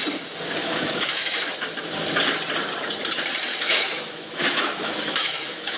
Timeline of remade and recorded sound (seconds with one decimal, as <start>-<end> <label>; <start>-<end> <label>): 0.0-0.6 recorded; 0.6-1.6 remade; 1.6-3.5 recorded; 3.5-5.8 remade